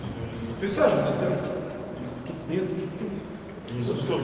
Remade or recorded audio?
recorded